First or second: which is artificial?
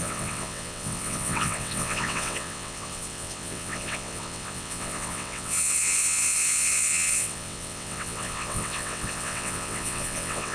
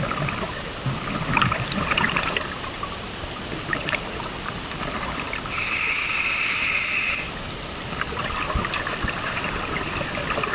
first